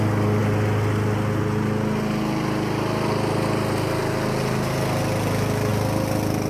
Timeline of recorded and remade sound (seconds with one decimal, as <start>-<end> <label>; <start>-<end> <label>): 0.0-6.5 recorded